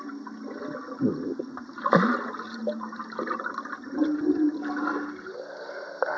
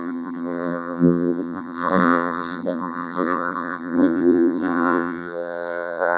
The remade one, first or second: second